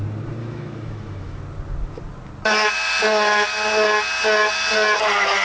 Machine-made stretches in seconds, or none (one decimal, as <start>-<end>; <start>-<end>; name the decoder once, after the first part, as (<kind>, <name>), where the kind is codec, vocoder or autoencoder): 0.4-1.4 (autoencoder, DAC-VAE)